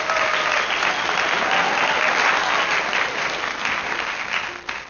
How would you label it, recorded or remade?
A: recorded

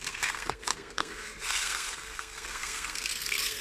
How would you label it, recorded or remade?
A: remade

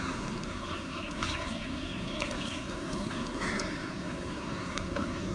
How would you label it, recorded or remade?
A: remade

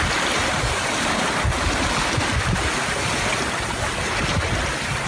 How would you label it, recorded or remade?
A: recorded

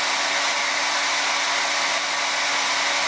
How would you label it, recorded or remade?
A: recorded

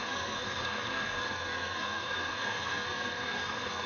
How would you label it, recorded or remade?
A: remade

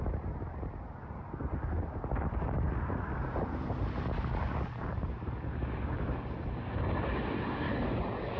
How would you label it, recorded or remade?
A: recorded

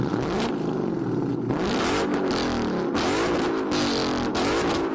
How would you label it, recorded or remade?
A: recorded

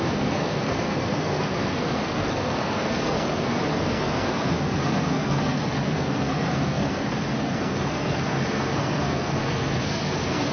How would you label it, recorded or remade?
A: remade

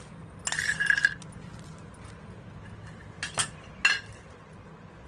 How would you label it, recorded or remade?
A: recorded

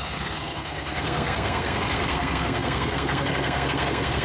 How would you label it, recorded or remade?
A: remade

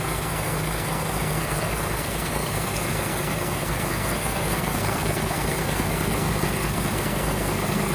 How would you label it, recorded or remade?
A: remade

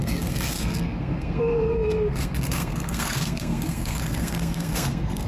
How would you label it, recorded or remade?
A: remade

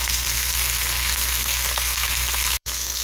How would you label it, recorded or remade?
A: remade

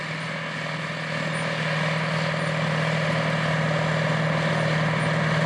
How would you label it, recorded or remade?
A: recorded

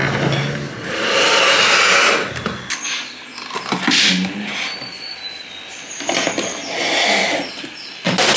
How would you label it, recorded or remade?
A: recorded